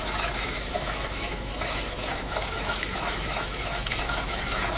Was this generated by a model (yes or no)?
yes